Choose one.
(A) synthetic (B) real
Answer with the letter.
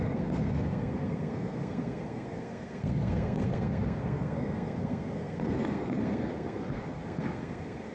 A